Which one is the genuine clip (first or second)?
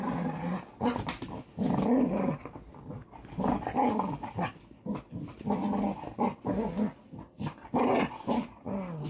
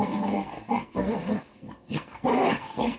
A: first